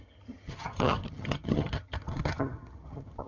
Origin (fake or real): fake